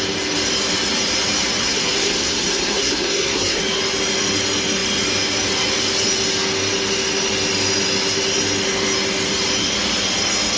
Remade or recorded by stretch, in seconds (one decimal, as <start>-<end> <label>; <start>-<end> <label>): 0.0-1.6 recorded; 1.6-3.6 remade; 3.6-10.6 recorded

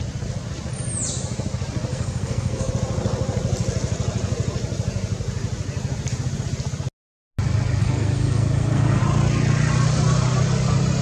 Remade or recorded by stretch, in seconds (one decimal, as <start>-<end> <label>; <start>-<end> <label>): 0.0-1.9 recorded; 1.9-2.7 remade; 2.7-7.8 recorded; 7.8-9.0 remade; 9.0-11.0 recorded

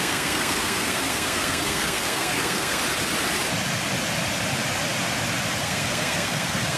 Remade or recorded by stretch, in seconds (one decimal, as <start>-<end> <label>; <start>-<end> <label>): 0.0-2.8 remade; 2.8-5.6 recorded; 5.6-6.8 remade

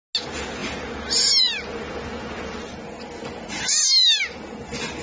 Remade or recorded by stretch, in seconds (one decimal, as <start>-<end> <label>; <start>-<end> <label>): 0.0-5.0 recorded